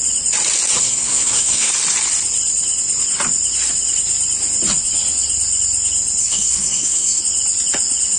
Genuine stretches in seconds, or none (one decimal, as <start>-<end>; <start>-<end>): 0.0-0.8; 1.7-6.2; 7.2-8.2